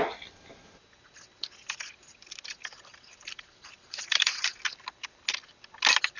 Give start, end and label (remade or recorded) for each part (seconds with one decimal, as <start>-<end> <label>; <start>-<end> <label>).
0.0-2.9 recorded; 2.9-4.6 remade; 4.6-6.2 recorded